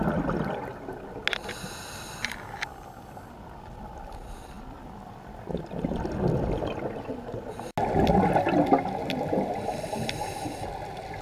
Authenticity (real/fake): real